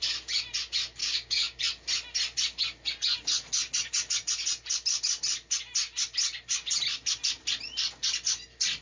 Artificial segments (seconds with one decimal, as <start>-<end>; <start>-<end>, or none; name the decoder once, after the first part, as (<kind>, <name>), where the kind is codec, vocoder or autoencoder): 1.0-1.6 (codec, DAC)